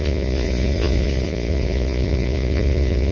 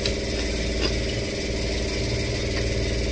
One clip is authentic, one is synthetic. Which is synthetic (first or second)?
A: first